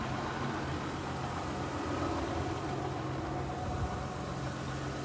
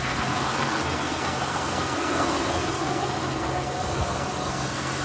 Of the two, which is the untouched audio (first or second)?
first